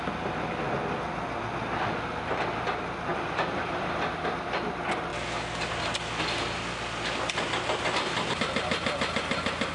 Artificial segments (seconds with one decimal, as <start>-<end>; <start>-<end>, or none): 3.1-4.2